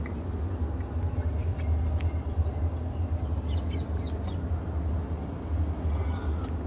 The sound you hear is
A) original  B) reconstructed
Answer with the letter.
A